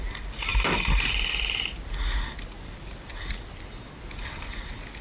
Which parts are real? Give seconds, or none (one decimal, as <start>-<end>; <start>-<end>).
0.0-5.0